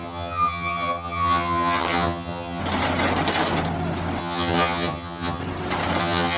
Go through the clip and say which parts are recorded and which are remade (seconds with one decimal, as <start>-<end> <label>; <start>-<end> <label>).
0.0-2.6 remade; 2.6-4.2 recorded; 4.2-5.4 remade; 5.4-6.0 recorded; 6.0-6.4 remade